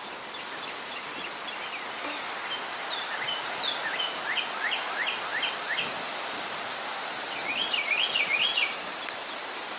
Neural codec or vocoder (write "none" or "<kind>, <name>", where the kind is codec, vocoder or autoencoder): none